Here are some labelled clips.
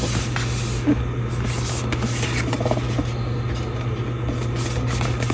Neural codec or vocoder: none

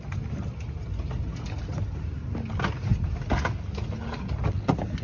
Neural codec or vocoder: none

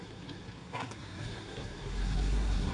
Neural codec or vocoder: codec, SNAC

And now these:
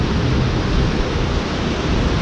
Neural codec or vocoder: none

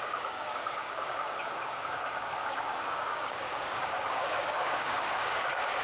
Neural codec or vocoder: codec, DAC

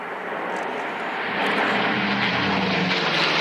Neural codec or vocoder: none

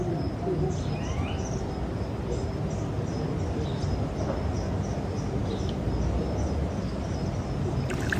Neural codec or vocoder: none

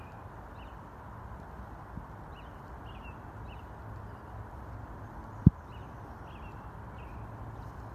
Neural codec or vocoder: none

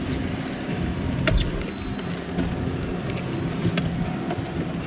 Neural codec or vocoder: none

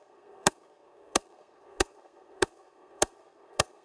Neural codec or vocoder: codec, SNAC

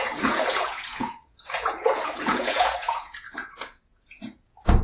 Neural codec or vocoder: vocoder, Vocos